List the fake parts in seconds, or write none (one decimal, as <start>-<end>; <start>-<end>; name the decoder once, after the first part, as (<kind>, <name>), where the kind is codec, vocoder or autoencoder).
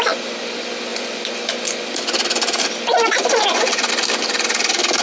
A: none